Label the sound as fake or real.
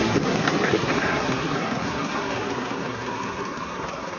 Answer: fake